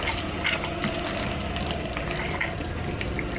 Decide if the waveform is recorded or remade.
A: recorded